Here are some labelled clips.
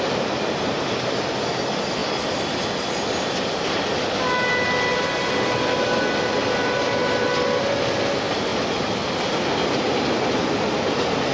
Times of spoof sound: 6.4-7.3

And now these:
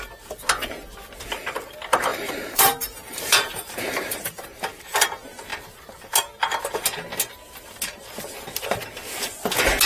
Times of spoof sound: 2.1-4.8

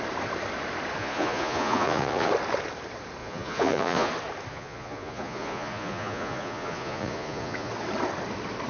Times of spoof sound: 1.0-2.3; 3.2-4.1; 4.5-7.7

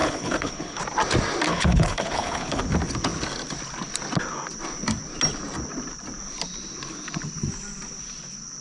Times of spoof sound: 0.0-0.8; 1.5-2.6

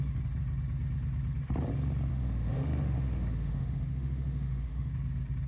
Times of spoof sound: 2.1-4.9

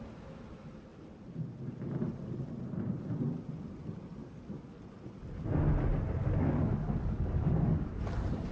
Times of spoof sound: 4.2-4.8; 6.2-8.0

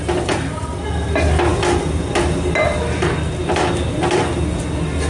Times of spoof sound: none